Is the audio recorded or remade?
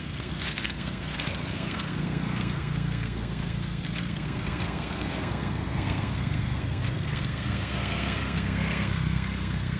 remade